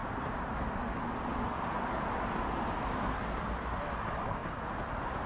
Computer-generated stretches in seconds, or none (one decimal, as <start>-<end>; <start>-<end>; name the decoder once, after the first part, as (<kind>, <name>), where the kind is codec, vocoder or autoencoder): none

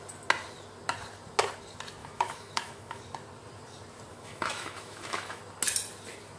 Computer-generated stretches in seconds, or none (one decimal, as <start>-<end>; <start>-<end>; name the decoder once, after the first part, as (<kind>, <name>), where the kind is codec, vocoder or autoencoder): 2.0-3.0 (autoencoder, DAC-VAE); 4.1-5.4